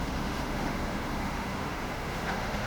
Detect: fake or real fake